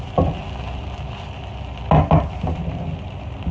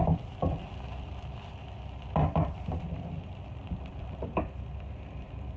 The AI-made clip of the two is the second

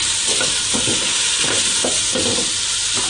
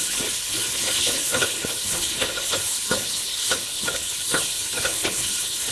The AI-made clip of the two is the second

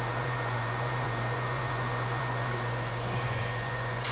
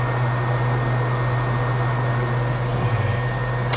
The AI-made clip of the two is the first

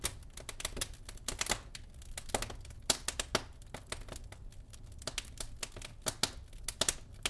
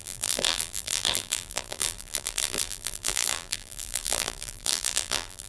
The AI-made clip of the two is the second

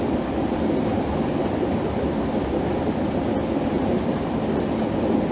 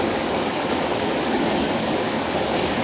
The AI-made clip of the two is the second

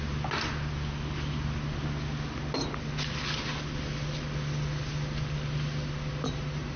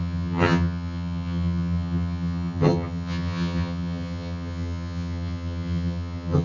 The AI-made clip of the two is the second